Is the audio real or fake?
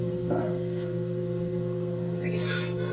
fake